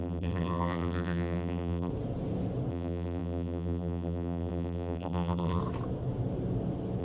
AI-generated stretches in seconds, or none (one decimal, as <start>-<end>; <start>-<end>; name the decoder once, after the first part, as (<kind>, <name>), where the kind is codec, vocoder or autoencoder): 0.0-1.9 (vocoder, BigVGAN v2); 2.7-5.6